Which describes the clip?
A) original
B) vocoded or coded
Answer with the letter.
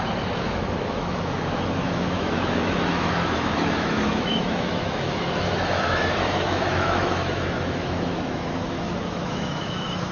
B